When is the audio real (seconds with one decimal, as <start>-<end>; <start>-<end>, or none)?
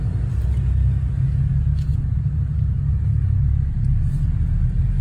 0.0-1.9